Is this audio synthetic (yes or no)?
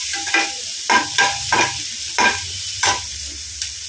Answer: no